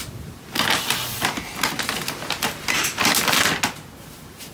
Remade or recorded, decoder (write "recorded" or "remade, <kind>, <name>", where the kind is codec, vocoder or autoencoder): recorded